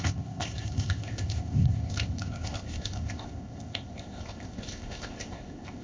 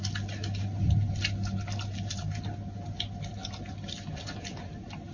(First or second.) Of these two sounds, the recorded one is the second